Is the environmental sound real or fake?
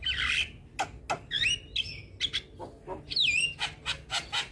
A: real